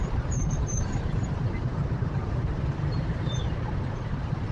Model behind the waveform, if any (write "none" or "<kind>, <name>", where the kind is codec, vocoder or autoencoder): vocoder, BigVGAN v2